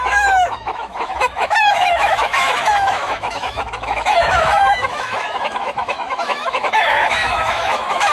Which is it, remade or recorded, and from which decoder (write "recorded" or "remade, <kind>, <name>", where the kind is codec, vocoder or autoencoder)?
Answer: remade, autoencoder, DAC-VAE